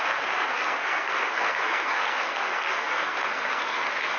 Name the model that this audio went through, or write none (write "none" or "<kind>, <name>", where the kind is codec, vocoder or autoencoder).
codec, SNAC